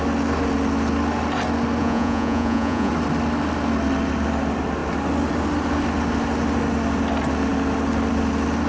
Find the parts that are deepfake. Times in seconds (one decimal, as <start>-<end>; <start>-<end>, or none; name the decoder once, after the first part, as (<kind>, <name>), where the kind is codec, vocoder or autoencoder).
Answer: 1.8-2.9 (vocoder, Vocos)